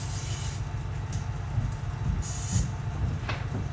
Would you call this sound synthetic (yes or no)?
no